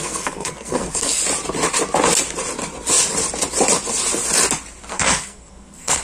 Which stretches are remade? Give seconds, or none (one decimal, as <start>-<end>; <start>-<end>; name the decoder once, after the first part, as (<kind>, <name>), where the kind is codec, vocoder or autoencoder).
0.0-1.2 (codec, SNAC); 4.8-6.0